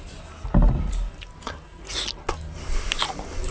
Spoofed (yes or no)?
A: no